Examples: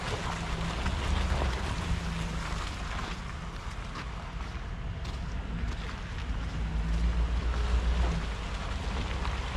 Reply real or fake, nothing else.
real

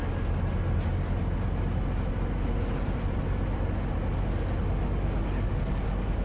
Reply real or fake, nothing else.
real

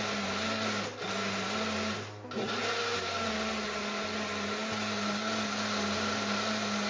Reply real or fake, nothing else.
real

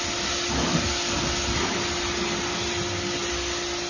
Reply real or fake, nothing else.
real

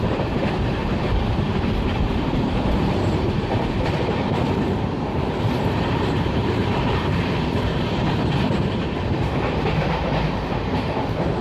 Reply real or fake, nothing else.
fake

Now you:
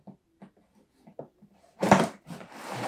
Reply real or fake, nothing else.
fake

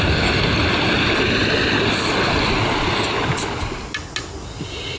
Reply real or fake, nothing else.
real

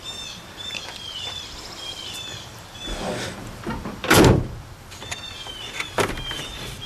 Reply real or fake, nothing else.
fake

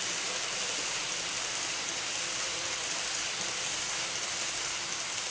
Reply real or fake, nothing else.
fake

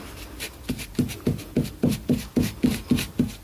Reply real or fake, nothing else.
real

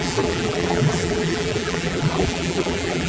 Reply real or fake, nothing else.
fake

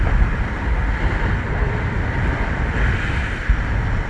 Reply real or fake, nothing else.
real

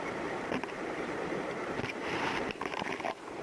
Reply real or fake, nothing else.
fake